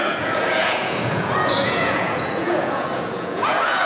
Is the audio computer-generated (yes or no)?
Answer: yes